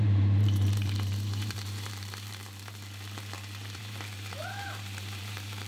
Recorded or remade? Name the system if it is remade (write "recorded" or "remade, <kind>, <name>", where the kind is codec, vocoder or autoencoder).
remade, vocoder, BigVGAN v2